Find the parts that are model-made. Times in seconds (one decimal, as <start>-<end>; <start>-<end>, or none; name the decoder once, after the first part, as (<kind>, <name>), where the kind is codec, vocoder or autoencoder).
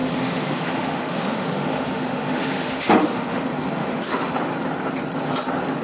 0.0-3.4 (autoencoder, DAC-VAE); 3.8-4.3